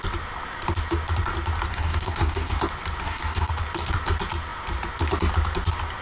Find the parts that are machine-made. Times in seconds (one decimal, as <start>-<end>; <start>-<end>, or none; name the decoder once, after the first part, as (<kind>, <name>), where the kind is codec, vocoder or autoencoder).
1.7-2.6 (codec, DAC); 3.0-3.5